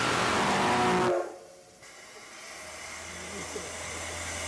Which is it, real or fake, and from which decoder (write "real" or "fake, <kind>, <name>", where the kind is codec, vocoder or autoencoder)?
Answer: real